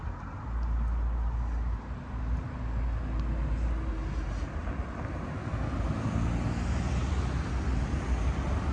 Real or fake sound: real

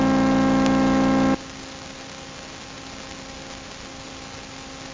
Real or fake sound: real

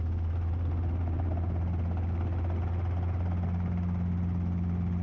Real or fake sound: real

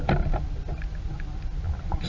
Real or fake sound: real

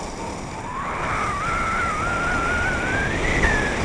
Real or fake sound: real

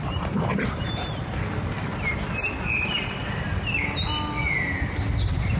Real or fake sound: real